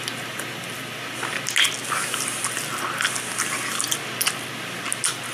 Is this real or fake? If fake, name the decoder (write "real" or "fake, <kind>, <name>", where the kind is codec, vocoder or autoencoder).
real